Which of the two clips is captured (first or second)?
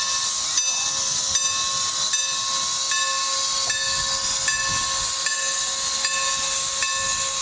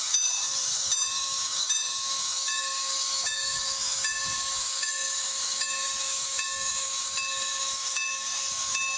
first